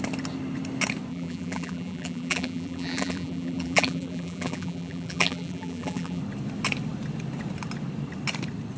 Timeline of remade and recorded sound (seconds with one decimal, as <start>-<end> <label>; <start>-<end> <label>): 0.0-1.1 recorded; 1.1-6.2 remade; 6.2-8.8 recorded